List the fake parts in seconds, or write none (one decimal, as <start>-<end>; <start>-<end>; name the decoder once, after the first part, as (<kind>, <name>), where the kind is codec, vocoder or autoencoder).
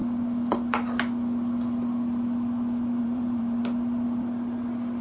3.0-3.6 (vocoder, BigVGAN v2)